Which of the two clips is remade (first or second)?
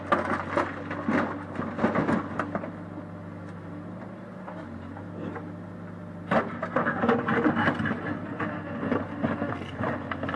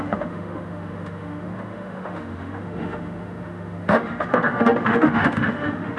second